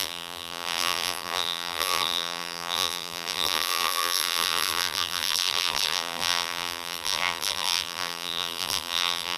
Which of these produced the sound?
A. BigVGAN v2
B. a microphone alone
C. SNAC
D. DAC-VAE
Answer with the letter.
A